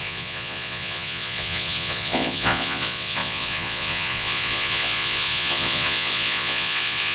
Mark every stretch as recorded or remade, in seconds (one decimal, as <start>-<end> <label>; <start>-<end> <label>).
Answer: 0.0-7.1 remade